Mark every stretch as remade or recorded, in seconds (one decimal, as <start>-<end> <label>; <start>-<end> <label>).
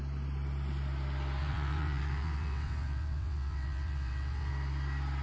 0.0-1.4 recorded; 1.4-4.5 remade; 4.5-5.2 recorded